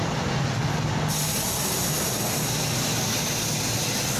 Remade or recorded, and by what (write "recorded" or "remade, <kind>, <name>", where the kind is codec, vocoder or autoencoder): recorded